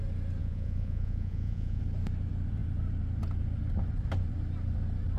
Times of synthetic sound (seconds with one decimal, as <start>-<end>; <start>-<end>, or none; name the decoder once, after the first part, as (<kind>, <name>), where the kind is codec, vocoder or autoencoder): 0.4-1.8 (vocoder, Vocos)